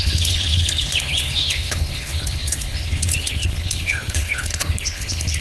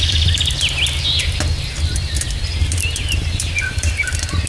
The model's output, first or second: first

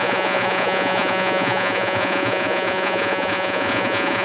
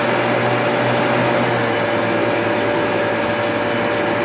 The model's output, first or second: first